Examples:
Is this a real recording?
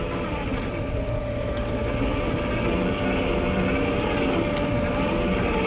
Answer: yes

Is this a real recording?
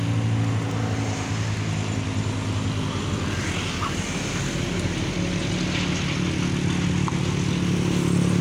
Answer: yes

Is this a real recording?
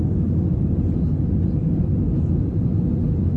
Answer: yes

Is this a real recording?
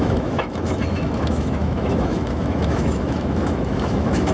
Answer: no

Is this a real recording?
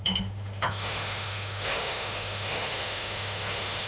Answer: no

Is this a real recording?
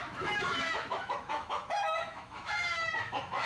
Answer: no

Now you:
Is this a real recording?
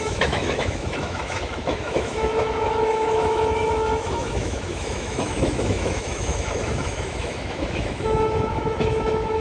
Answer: no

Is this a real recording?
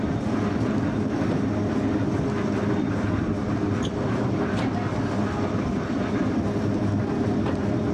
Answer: yes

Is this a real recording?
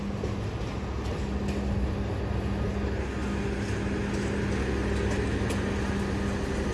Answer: yes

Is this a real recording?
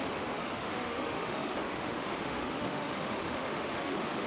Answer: no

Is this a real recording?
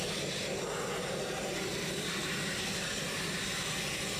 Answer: yes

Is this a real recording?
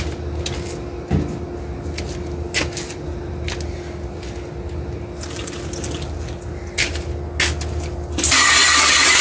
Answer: yes